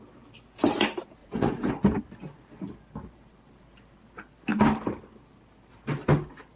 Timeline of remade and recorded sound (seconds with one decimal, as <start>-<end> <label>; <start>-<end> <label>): 0.0-1.2 recorded; 1.2-1.7 remade; 1.7-6.6 recorded